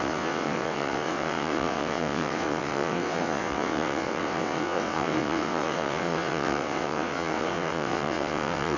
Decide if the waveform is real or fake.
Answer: fake